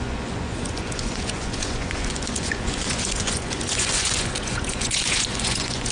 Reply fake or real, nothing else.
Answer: fake